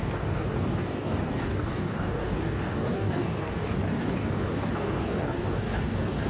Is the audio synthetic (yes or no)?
yes